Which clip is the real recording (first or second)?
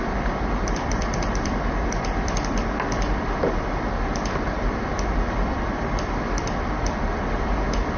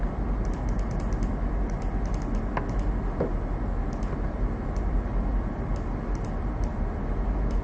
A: second